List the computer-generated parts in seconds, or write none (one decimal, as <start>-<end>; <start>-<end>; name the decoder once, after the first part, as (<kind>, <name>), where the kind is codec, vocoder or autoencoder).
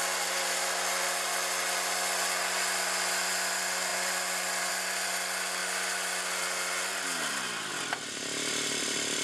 none